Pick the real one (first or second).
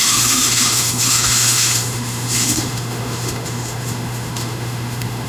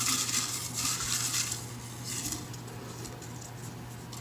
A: second